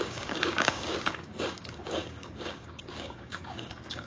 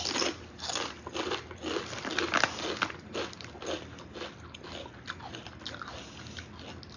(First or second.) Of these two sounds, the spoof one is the first